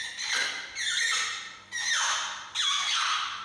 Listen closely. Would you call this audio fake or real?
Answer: real